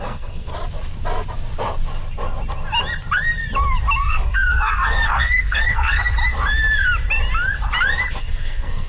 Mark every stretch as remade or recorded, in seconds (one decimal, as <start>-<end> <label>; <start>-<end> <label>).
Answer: 0.0-0.5 remade; 0.5-4.0 recorded; 4.0-6.2 remade; 6.2-8.2 recorded; 8.2-8.9 remade